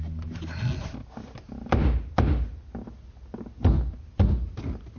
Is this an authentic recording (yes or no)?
yes